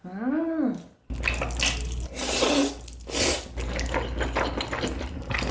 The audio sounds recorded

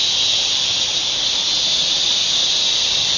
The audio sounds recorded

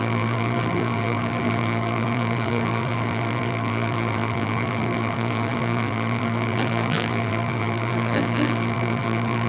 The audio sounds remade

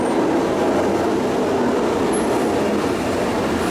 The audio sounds recorded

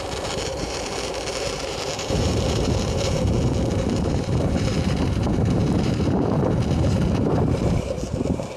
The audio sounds remade